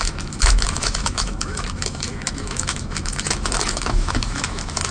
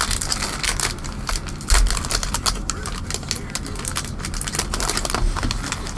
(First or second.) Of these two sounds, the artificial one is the first